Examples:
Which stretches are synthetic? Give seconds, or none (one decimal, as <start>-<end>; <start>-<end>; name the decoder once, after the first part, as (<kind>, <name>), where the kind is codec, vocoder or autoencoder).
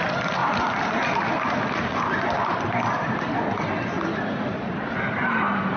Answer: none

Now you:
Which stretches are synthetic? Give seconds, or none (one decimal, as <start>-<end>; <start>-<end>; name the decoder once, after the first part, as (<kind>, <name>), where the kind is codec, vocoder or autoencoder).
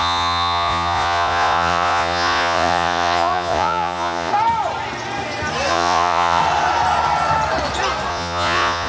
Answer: 0.0-4.3 (vocoder, Vocos); 5.7-6.4; 8.1-8.9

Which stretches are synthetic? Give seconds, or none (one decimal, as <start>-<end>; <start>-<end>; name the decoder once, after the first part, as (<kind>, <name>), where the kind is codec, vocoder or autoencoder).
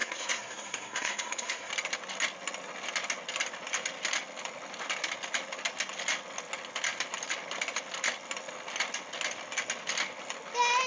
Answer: 0.0-1.7 (codec, SNAC)